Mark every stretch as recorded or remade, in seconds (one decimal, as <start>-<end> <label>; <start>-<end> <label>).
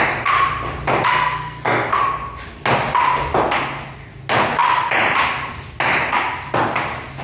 0.0-1.1 recorded; 1.1-2.0 remade; 2.0-7.2 recorded